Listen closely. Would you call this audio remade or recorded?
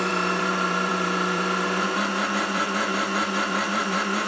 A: remade